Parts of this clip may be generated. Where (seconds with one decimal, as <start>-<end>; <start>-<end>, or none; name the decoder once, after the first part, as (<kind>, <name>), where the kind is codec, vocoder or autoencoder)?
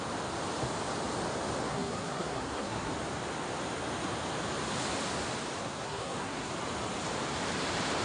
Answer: 1.7-2.9 (codec, SNAC); 5.6-6.5